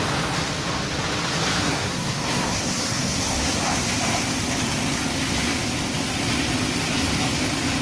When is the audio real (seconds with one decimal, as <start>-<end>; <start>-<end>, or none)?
0.0-1.6; 3.6-7.8

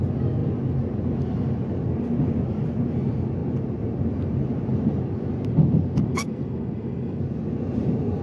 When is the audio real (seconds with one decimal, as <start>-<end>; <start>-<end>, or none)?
0.0-6.1; 7.2-8.2